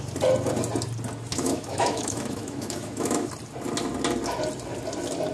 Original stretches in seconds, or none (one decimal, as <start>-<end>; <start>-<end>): 0.0-1.3; 3.3-5.3